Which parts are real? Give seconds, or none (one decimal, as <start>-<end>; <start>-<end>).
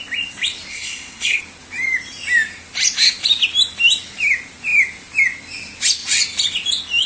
0.0-0.7; 1.4-7.1